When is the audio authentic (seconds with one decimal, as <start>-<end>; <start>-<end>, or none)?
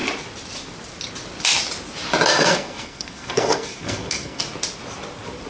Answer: 0.0-2.3; 4.4-5.5